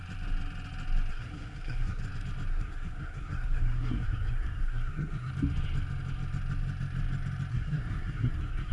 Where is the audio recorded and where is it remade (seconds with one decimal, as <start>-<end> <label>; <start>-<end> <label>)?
0.0-1.1 recorded; 1.1-2.0 remade; 2.0-2.5 recorded; 2.5-5.3 remade; 5.3-7.5 recorded; 7.5-8.7 remade